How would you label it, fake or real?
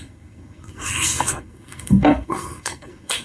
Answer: fake